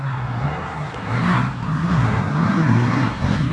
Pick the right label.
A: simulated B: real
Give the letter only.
A